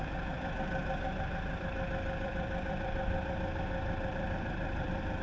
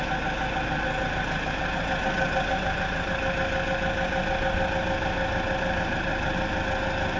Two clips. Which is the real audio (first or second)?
second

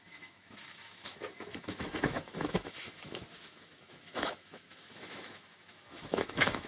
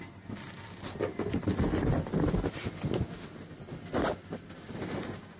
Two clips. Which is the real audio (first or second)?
second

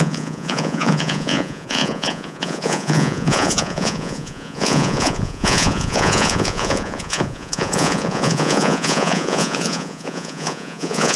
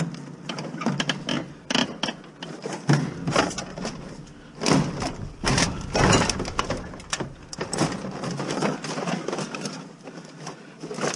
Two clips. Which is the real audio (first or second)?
second